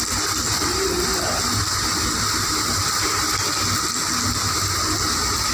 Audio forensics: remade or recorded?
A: recorded